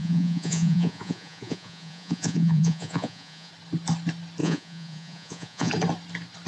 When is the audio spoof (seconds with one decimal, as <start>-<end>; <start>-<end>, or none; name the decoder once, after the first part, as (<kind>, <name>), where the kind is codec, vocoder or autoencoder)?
0.0-3.5 (vocoder, Vocos); 4.4-5.7